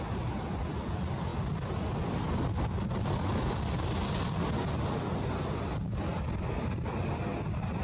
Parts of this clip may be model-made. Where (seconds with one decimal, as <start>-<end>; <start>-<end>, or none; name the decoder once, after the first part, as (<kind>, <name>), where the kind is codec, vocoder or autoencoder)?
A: none